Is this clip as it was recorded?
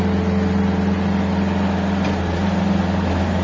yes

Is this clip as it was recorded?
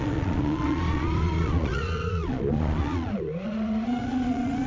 no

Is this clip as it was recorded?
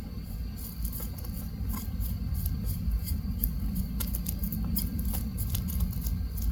yes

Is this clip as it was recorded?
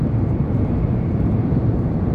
no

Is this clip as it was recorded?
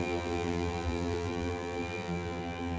no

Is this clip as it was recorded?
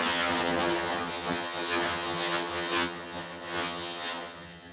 no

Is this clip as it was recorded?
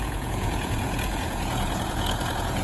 no